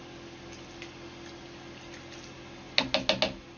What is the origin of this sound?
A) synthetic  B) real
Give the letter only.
B